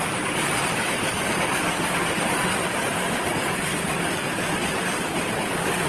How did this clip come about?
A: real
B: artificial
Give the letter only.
A